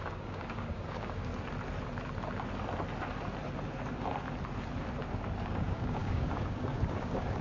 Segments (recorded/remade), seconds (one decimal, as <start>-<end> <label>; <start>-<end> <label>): 0.0-1.3 remade; 1.3-5.4 recorded; 5.4-7.4 remade